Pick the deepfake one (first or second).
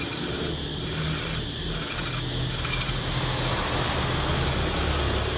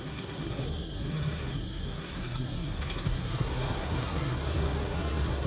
second